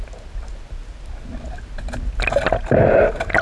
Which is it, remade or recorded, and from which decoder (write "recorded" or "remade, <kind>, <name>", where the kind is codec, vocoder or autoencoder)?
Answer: recorded